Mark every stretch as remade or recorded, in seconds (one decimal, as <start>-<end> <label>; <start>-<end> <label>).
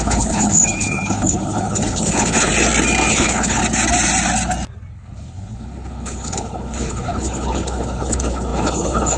0.0-2.5 remade; 2.5-3.1 recorded; 3.1-3.6 remade; 3.6-4.9 recorded; 4.9-9.2 remade